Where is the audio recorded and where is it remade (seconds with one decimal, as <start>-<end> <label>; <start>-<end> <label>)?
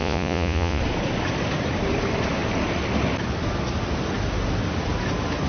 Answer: 0.0-0.8 remade; 0.8-5.5 recorded